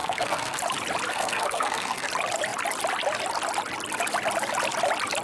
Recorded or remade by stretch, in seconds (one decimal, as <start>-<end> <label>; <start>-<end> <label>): 0.0-0.6 remade; 0.6-1.1 recorded; 1.1-2.1 remade; 2.1-5.2 recorded